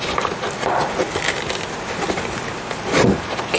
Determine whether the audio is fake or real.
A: real